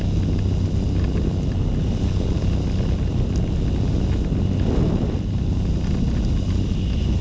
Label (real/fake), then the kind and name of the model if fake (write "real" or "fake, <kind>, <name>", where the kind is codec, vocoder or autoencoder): real